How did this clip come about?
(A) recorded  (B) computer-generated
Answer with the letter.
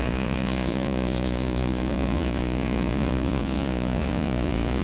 B